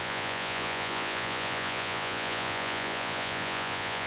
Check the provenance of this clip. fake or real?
fake